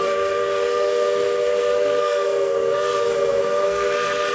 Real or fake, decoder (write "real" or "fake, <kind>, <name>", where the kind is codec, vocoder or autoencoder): fake, codec, SNAC